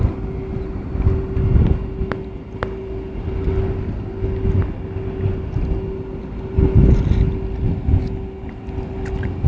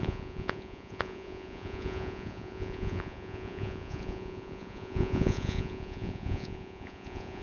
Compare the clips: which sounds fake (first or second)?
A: second